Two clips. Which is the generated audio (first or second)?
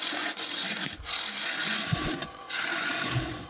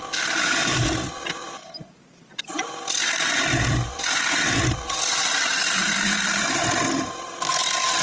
first